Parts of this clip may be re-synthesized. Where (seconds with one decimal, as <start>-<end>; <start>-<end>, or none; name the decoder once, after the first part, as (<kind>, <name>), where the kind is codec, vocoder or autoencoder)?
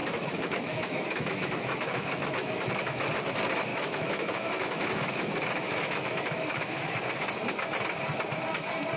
0.0-3.3 (autoencoder, DAC-VAE); 3.7-7.0